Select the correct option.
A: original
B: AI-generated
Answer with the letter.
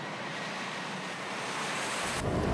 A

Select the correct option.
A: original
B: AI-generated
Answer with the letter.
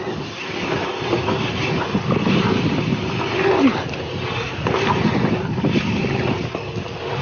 A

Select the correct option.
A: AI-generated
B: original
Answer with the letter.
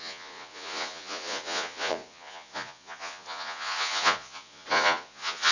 A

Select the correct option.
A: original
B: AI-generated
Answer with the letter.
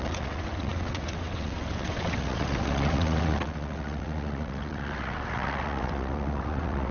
B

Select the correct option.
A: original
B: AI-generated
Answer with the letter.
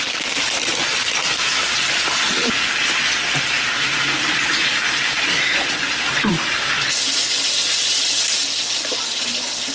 A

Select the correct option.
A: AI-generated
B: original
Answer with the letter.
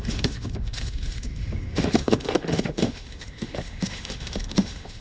A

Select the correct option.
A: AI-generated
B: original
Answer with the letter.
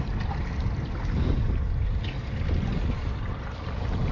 B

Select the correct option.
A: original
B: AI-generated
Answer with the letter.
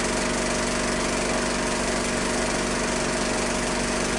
A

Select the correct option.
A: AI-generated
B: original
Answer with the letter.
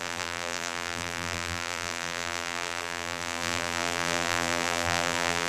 A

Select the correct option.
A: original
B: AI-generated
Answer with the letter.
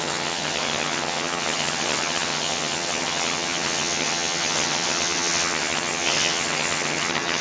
B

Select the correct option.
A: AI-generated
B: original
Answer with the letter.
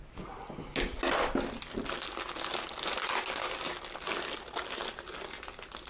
B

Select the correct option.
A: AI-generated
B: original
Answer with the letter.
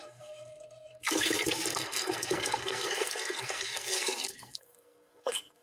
A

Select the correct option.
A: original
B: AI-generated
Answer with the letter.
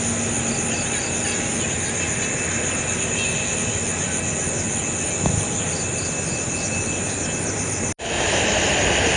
A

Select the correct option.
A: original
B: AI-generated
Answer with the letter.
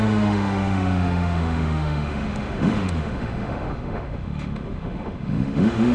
B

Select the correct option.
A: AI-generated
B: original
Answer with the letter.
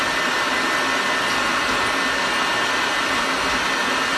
B